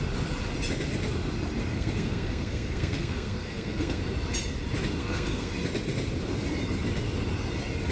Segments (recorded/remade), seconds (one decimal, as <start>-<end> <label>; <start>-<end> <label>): 0.0-1.7 recorded; 1.7-4.0 remade; 4.0-5.0 recorded; 5.0-5.5 remade; 5.5-7.9 recorded